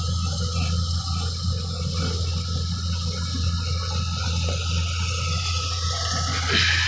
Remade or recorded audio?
recorded